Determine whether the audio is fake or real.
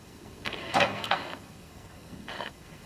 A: fake